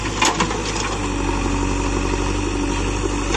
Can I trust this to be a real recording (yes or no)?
yes